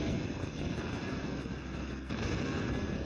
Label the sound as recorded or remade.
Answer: remade